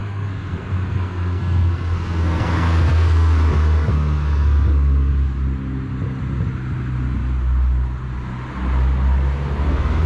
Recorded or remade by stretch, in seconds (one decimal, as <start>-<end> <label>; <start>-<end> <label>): 0.0-5.1 remade; 5.1-9.7 recorded; 9.7-10.1 remade